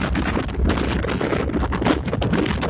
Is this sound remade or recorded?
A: recorded